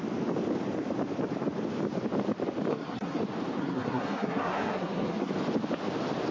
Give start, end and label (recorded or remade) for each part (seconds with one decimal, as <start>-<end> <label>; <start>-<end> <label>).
0.0-2.7 recorded; 2.7-3.2 remade; 3.2-3.6 recorded; 3.6-5.3 remade; 5.3-6.3 recorded